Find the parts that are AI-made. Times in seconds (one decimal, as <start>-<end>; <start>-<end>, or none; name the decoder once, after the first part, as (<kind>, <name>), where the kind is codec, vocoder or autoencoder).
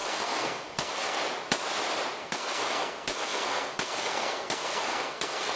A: 0.0-1.2 (codec, SNAC); 2.2-5.6